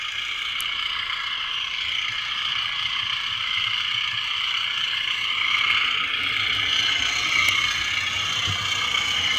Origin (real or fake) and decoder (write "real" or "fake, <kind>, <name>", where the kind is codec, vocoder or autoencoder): real